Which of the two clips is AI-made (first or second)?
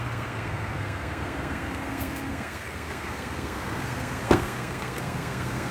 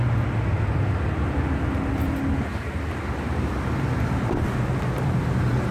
first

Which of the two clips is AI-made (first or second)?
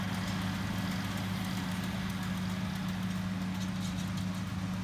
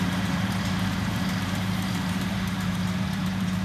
second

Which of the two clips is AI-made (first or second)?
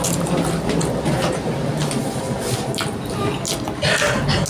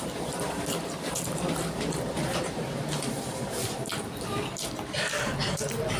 second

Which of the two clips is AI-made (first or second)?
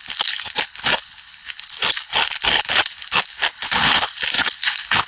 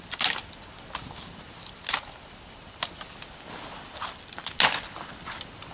first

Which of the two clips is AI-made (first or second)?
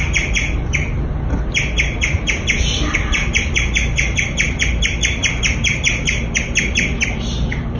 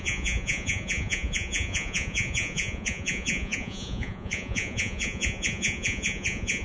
second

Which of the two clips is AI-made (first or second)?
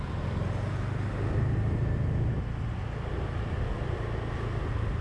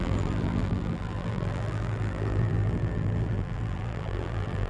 second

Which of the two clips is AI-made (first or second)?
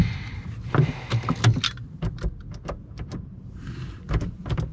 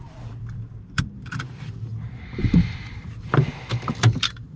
second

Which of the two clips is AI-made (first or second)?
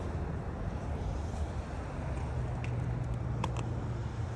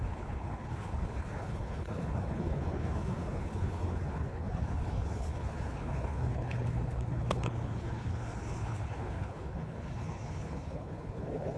second